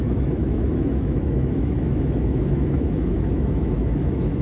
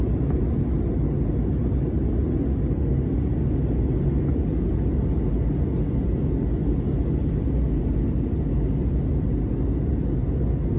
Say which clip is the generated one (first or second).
first